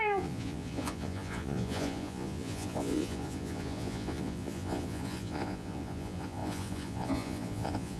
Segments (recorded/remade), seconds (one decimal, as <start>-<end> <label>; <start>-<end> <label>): 0.0-8.0 remade